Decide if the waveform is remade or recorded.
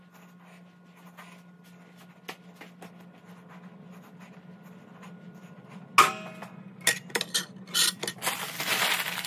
recorded